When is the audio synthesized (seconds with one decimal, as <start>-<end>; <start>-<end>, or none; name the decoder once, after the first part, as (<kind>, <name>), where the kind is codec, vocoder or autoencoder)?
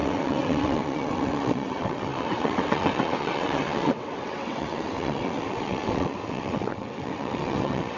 0.0-8.0 (vocoder, WaveNeXt)